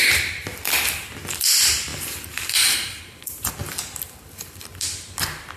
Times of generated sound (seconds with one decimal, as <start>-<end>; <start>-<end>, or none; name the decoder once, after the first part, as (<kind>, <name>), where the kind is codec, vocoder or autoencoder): 1.9-3.5 (vocoder, BigVGAN v2)